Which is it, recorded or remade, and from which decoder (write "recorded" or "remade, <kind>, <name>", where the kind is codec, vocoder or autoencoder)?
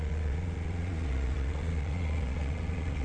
remade, vocoder, Vocos